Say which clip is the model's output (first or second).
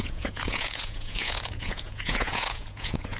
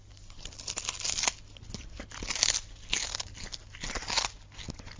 first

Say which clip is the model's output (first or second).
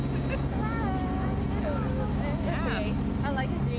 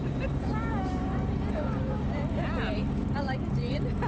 second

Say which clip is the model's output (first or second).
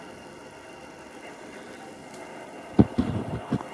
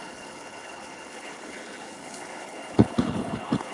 second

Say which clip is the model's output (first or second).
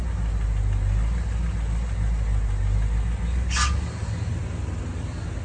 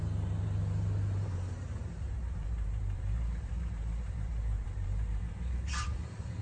second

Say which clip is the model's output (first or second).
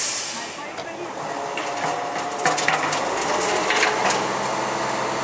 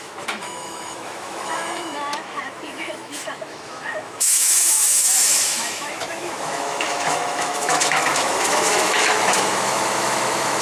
second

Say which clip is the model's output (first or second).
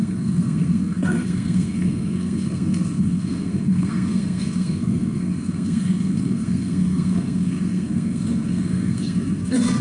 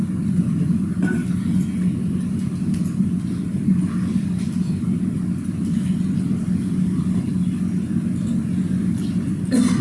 first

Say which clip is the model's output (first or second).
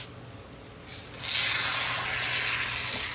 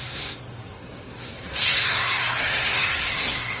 second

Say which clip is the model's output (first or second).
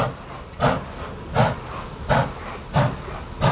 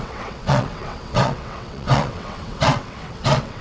second